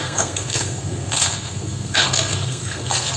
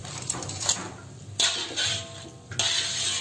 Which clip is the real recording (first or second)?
second